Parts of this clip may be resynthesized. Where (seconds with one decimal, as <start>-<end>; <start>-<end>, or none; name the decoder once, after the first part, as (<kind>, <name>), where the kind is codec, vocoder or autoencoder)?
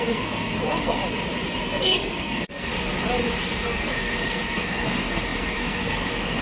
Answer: 0.0-1.0 (codec, SNAC); 1.6-2.7; 3.5-6.4